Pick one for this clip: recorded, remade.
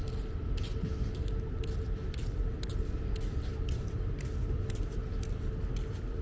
recorded